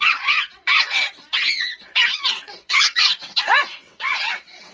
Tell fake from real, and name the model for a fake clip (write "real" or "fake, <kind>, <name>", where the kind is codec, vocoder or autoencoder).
fake, vocoder, WaveNeXt